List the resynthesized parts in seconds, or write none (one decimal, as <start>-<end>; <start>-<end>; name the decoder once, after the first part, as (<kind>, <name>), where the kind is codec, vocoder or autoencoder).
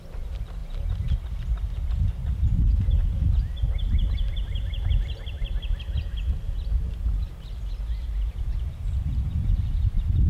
2.2-4.9 (vocoder, BigVGAN v2); 7.0-9.7